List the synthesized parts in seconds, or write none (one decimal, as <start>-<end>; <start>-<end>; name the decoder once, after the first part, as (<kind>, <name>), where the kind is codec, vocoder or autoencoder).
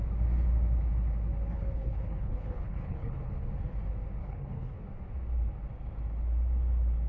1.5-3.3 (codec, HILCodec); 4.2-4.8